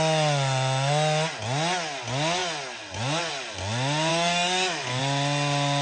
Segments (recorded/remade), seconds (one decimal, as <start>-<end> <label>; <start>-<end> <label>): 0.0-4.1 recorded; 4.1-5.0 remade; 5.0-5.8 recorded